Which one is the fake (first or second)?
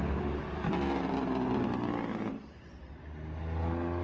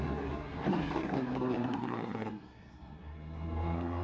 second